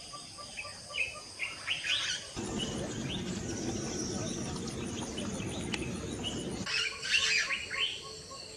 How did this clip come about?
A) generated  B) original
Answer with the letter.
B